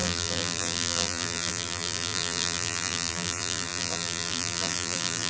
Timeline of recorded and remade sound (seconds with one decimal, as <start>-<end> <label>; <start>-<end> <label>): 0.0-5.3 remade